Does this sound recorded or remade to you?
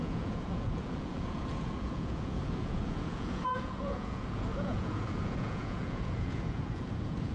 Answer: remade